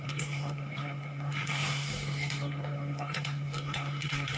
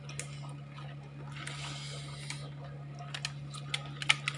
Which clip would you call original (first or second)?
second